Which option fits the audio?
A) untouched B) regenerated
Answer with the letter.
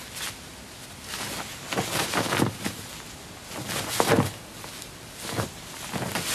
A